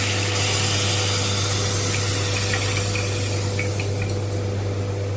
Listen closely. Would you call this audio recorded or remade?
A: recorded